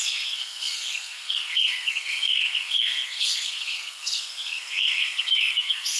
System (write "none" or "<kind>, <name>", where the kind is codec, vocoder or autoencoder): codec, SNAC